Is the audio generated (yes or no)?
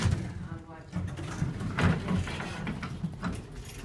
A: no